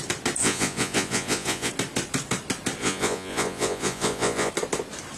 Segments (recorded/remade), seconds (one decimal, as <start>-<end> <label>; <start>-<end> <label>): 0.0-0.4 recorded; 0.4-1.7 remade; 1.7-2.8 recorded; 2.8-4.5 remade; 4.5-5.2 recorded